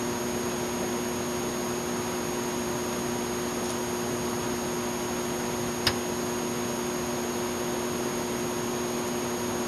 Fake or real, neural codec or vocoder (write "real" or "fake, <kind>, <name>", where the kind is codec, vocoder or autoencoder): real